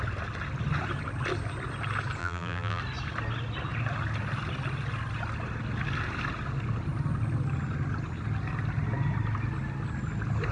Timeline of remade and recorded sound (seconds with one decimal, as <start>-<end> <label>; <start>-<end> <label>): 0.0-2.2 recorded; 2.2-2.8 remade; 2.8-10.5 recorded